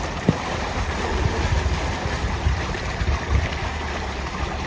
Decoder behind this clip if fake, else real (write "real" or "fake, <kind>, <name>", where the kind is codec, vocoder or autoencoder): fake, vocoder, BigVGAN v2